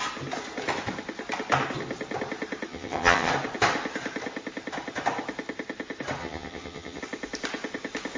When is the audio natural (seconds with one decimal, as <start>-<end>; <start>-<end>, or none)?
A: 0.0-2.7; 3.3-6.2; 7.0-8.2